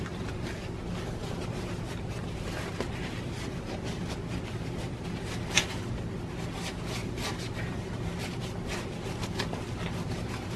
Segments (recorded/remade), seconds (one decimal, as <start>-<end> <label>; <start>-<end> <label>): 0.0-3.0 recorded; 3.0-4.0 remade; 4.0-7.0 recorded; 7.0-8.2 remade; 8.2-10.6 recorded